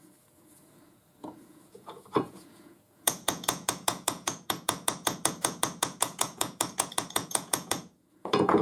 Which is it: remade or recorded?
remade